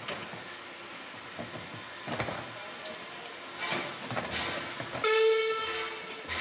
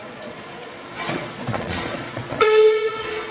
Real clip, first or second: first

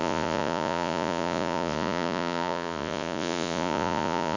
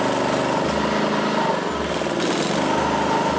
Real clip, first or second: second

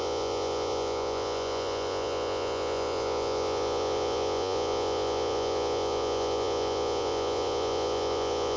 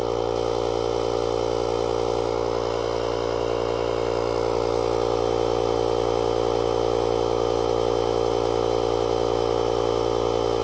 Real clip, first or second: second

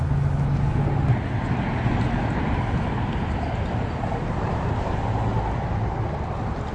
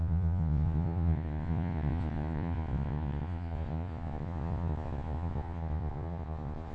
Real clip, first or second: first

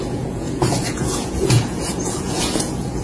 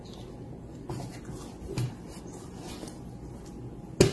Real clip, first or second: second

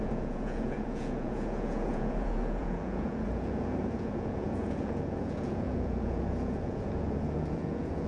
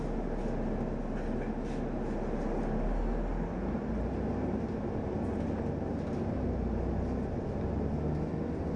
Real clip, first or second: second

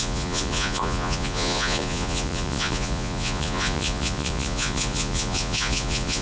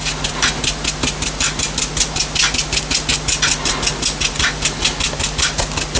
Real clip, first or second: second